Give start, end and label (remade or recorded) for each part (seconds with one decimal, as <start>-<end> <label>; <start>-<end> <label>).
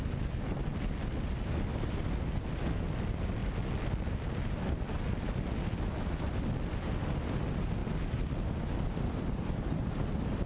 0.0-0.7 recorded; 0.7-2.2 remade; 2.2-7.8 recorded; 7.8-10.5 remade